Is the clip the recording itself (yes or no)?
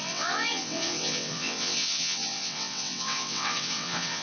no